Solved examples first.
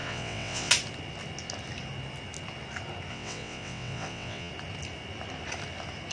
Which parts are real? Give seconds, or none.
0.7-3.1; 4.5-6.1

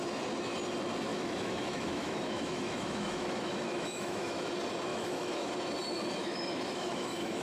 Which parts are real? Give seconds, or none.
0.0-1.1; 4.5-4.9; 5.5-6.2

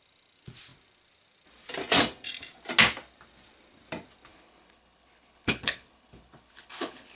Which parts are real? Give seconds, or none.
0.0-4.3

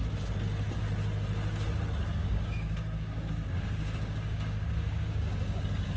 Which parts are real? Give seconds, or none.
0.0-2.2; 5.6-6.0

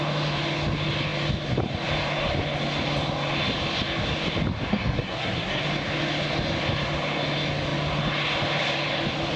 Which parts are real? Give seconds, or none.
0.0-4.7; 5.6-9.4

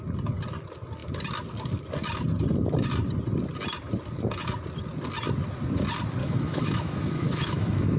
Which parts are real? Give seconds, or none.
0.0-6.2